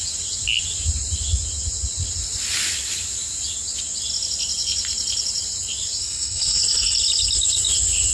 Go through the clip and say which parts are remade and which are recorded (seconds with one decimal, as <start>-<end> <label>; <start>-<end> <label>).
0.0-6.0 recorded; 6.0-6.6 remade; 6.6-8.1 recorded